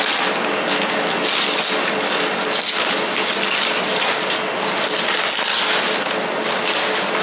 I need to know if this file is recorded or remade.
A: recorded